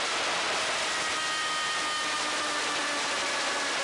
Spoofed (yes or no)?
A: no